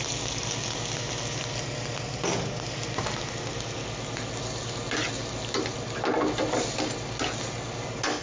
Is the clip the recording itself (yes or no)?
yes